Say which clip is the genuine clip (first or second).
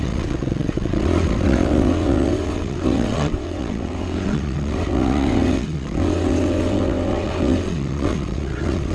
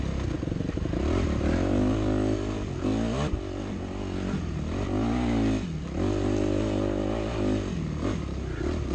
second